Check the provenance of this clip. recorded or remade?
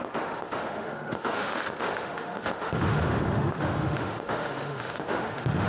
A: remade